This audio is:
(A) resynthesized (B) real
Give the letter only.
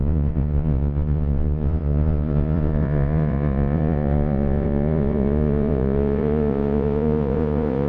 A